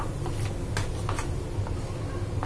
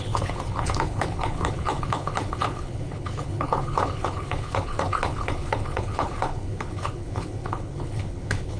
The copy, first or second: second